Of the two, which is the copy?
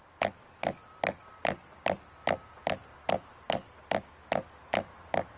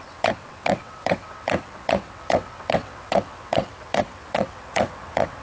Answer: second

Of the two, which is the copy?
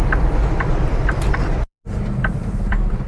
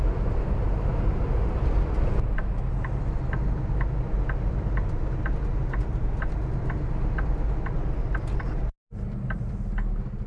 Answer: first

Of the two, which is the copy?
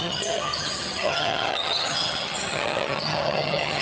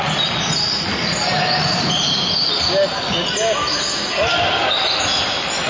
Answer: first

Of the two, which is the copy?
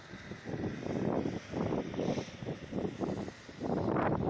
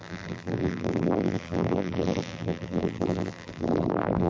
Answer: second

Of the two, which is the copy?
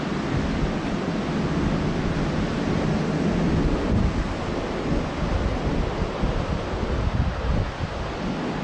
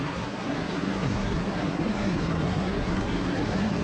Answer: second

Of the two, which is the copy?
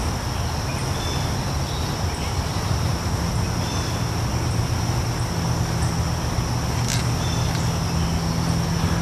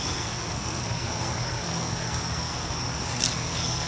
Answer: second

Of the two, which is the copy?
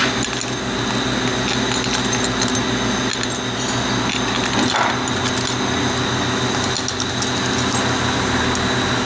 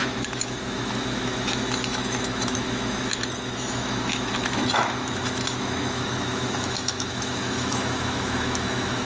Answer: second